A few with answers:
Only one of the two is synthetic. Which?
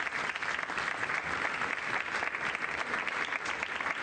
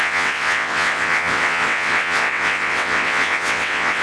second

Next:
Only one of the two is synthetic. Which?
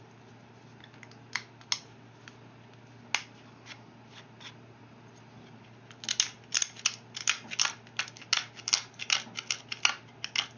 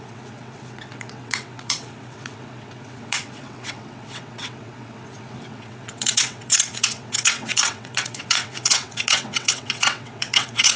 second